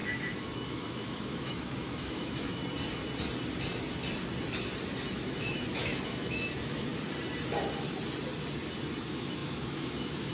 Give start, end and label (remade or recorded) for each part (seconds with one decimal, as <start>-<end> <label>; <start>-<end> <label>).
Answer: 0.0-2.6 remade; 2.6-5.1 recorded; 5.1-6.9 remade; 6.9-9.0 recorded; 9.0-10.3 remade